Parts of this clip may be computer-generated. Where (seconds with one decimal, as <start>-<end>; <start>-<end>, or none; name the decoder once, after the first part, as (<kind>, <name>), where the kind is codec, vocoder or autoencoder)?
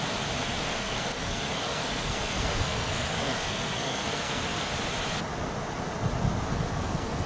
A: 0.5-4.7 (codec, SNAC); 6.5-7.3